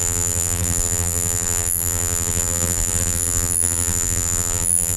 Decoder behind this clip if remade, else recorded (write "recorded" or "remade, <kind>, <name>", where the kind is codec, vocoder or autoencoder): remade, vocoder, BigVGAN v2